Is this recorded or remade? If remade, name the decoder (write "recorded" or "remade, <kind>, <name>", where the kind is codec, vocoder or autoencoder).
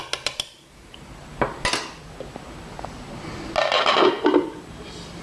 recorded